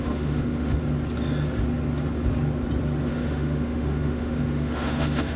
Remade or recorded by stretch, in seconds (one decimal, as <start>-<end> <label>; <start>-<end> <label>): 0.0-0.8 remade; 0.8-3.1 recorded; 3.1-5.4 remade